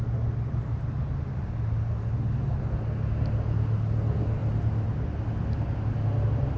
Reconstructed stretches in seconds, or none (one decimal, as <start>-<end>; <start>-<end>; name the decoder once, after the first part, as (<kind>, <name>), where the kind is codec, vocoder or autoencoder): none